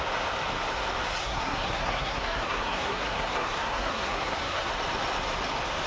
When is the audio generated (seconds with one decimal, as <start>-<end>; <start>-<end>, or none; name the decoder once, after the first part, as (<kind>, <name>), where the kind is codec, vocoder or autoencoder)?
1.2-4.7 (codec, SNAC)